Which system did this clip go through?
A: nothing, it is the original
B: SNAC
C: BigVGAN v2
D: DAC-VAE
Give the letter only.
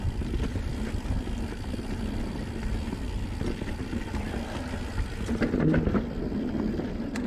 A